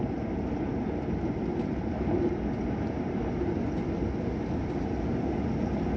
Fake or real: real